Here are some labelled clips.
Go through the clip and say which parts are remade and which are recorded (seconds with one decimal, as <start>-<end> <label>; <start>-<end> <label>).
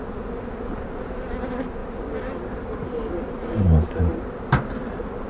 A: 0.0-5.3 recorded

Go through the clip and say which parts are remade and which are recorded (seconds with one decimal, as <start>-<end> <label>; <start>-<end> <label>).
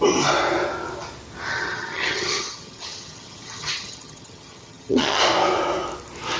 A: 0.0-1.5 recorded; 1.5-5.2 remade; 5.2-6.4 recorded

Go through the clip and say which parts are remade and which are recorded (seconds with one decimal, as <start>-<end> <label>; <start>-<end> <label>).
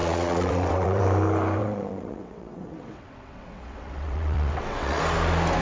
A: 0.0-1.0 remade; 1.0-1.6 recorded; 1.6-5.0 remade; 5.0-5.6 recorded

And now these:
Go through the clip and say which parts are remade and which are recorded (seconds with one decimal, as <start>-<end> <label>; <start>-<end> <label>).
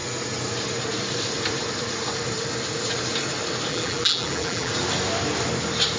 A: 0.0-3.7 recorded; 3.7-4.7 remade; 4.7-6.0 recorded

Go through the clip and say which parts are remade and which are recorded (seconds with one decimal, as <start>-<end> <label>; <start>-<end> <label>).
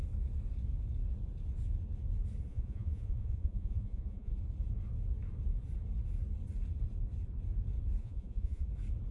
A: 0.0-2.5 recorded; 2.5-4.4 remade; 4.4-8.0 recorded; 8.0-8.7 remade; 8.7-9.1 recorded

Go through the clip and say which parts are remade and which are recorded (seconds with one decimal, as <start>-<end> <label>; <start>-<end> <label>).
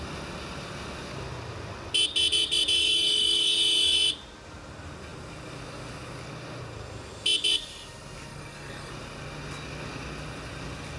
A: 0.0-2.8 recorded; 2.8-3.6 remade; 3.6-8.3 recorded; 8.3-8.9 remade; 8.9-11.0 recorded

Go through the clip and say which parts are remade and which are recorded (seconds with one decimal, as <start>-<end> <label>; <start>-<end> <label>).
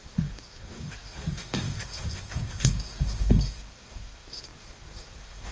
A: 0.0-5.5 remade